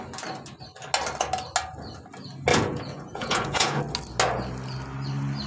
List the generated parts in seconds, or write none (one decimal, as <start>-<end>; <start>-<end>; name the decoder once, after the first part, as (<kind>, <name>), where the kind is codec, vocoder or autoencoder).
2.5-3.8 (vocoder, Vocos)